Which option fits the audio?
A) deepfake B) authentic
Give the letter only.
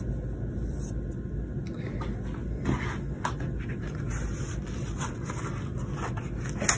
B